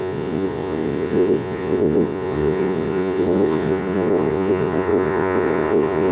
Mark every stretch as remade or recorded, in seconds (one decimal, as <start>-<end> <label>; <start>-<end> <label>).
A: 0.0-6.1 remade